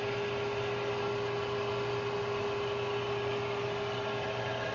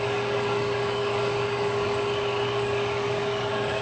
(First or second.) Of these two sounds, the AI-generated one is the second